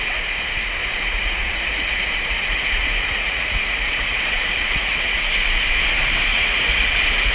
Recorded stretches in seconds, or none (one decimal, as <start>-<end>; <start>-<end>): 0.0-0.8; 5.2-6.3